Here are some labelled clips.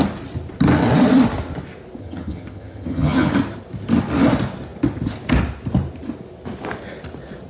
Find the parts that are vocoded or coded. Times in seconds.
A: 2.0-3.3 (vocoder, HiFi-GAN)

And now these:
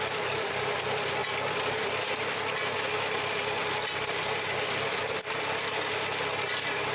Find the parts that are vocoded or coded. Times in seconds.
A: none